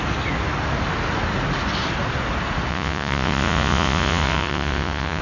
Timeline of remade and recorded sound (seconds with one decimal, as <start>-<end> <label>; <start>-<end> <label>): 0.0-2.7 recorded; 2.7-5.2 remade